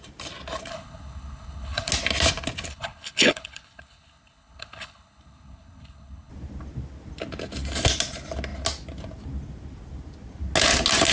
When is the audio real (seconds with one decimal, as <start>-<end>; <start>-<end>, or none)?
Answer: 0.0-0.7; 1.9-2.7; 6.3-11.1